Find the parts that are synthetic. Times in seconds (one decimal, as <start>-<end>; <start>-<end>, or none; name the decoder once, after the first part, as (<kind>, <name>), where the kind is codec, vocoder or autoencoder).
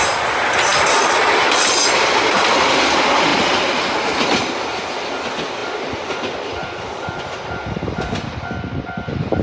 none